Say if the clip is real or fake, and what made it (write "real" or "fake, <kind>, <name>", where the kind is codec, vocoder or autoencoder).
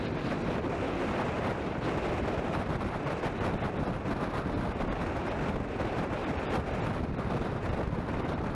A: real